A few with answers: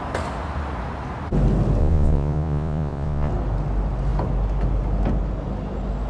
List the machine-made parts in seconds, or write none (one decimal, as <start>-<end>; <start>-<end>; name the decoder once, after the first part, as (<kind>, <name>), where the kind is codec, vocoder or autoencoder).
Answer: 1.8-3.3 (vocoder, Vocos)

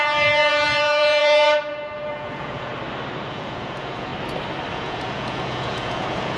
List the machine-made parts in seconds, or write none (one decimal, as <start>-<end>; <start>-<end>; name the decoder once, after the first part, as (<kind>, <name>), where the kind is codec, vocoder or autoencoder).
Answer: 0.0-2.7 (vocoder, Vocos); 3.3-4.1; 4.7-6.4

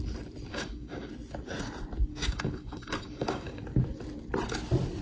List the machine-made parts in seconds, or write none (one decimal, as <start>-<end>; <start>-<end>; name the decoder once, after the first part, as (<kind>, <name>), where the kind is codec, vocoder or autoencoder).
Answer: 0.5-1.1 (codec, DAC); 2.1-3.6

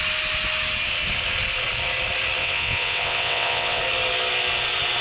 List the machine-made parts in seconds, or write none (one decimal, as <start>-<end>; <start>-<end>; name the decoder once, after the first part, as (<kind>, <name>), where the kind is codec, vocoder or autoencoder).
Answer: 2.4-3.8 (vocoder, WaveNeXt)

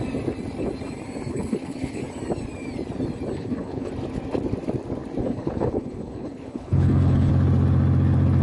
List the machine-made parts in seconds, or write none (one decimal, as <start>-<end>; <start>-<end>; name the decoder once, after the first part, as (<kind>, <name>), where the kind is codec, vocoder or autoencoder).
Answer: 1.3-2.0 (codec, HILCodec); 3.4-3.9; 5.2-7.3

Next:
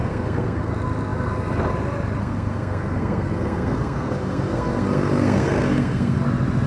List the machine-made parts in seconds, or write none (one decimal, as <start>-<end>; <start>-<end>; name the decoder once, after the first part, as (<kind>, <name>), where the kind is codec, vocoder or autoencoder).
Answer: 0.0-0.7 (codec, SNAC); 2.2-6.2

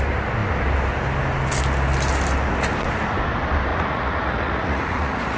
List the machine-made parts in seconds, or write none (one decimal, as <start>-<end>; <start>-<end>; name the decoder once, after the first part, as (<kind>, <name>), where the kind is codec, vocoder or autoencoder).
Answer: 3.7-5.4 (vocoder, Vocos)

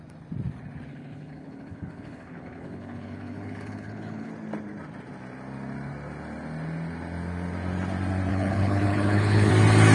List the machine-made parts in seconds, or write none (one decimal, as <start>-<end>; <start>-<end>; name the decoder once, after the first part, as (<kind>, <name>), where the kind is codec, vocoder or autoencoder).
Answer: 0.9-4.3 (codec, HILCodec); 8.3-9.5